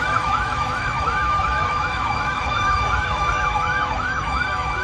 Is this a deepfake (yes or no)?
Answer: yes